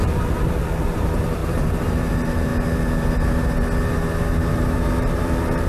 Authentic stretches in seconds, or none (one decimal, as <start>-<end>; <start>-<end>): 1.4-1.9; 2.5-4.5